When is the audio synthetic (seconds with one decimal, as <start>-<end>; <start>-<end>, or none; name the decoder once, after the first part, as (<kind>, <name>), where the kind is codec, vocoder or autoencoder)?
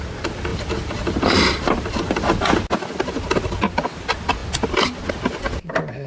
none